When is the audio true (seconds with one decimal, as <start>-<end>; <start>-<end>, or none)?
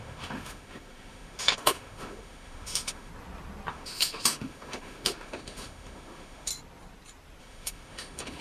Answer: 3.1-3.7; 6.5-7.4